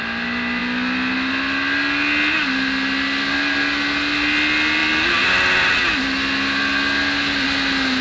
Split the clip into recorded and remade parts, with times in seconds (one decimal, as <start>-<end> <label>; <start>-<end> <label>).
0.0-8.0 recorded